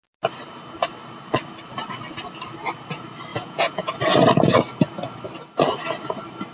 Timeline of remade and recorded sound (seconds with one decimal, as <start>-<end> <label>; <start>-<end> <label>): 0.0-3.3 recorded; 3.3-3.9 remade; 3.9-6.5 recorded